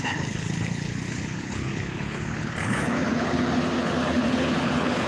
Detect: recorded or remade remade